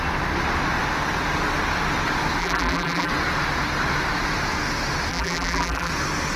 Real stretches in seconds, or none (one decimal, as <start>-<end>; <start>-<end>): 0.0-2.4; 3.1-5.1; 5.9-6.4